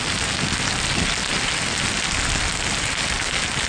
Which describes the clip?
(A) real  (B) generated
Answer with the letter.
A